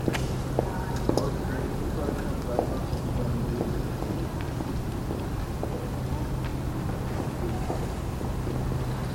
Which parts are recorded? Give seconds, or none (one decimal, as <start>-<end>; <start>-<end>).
0.0-3.5; 4.5-6.5; 7.4-9.1